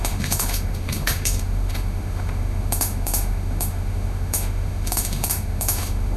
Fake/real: fake